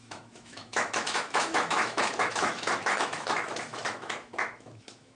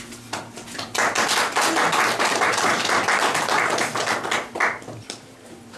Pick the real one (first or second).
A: second